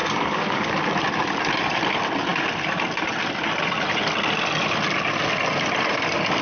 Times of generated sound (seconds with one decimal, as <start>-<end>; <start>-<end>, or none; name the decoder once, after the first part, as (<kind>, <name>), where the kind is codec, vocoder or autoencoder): 0.0-0.8 (codec, DAC)